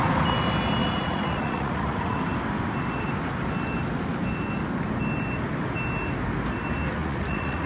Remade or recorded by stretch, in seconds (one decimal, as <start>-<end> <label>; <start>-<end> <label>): 0.0-0.8 recorded; 0.8-2.2 remade; 2.2-7.0 recorded; 7.0-7.7 remade